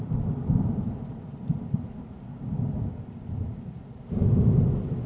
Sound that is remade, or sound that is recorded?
recorded